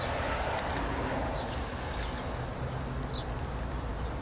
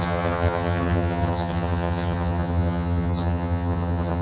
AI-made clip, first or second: second